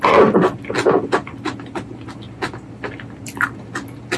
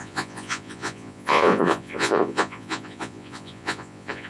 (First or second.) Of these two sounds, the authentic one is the first